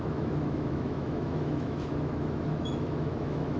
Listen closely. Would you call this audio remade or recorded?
remade